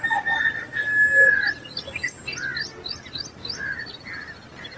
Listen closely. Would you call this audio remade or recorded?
recorded